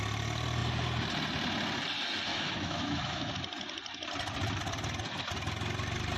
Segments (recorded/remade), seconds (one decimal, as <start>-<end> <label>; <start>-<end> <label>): 0.0-2.3 recorded; 2.3-3.3 remade; 3.3-6.2 recorded